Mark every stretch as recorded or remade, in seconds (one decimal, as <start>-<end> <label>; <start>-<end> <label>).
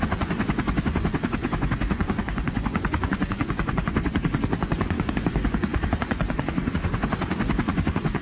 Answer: 0.0-8.2 remade